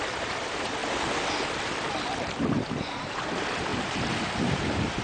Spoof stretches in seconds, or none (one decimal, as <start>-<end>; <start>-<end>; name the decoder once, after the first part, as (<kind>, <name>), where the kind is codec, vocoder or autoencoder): 0.0-0.8 (vocoder, BigVGAN v2); 2.4-3.7; 4.4-5.0